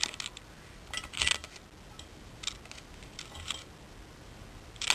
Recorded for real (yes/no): yes